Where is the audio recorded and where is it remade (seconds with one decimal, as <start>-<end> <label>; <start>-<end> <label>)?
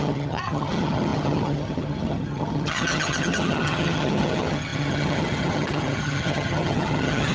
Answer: 0.0-7.3 remade